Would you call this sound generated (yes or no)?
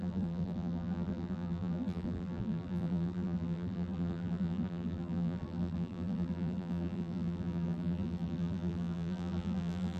yes